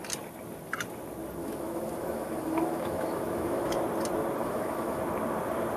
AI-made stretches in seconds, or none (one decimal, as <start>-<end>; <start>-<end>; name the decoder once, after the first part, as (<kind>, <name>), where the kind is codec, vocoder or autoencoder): 1.4-3.8 (autoencoder, DAC-VAE); 4.4-5.0